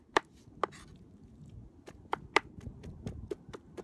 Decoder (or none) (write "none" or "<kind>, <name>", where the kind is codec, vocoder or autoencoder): none